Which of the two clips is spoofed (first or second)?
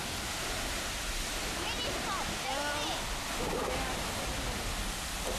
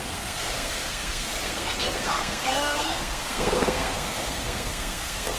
second